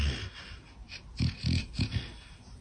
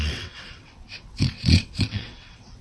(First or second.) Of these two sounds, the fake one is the second